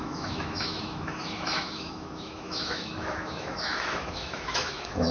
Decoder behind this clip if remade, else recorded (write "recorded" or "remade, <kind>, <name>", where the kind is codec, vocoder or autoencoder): remade, autoencoder, DAC-VAE